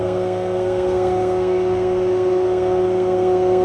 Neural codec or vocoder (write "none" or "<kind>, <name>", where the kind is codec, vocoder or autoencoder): codec, SNAC